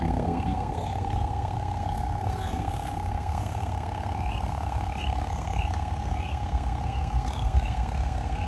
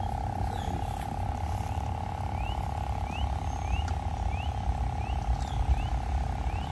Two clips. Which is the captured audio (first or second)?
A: second